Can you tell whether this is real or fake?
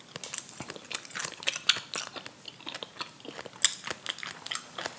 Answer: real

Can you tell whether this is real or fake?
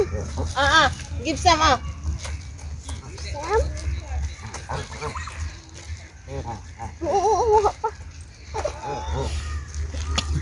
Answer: real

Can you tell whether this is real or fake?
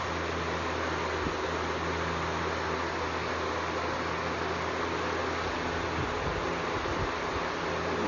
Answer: real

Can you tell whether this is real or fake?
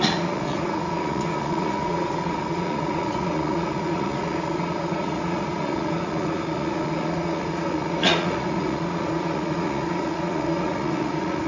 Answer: fake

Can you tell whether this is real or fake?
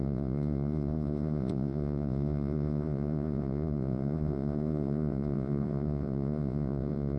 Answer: fake